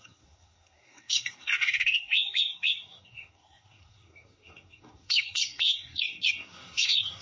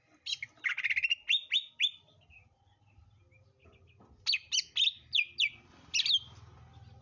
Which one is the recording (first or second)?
second